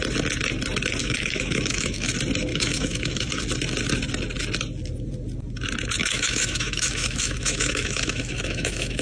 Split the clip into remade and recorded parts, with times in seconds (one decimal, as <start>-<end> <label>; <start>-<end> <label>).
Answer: 0.0-1.0 recorded; 1.0-2.1 remade; 2.1-2.5 recorded; 2.5-3.3 remade; 3.3-6.0 recorded; 6.0-9.0 remade